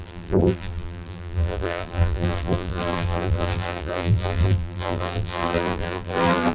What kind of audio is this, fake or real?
fake